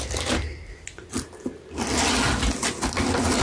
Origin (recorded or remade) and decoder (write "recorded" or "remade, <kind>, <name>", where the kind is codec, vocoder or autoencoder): recorded